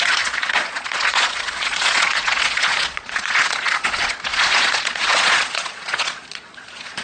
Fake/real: fake